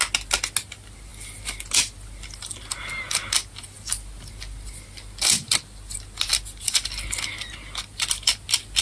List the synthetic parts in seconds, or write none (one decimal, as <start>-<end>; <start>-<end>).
none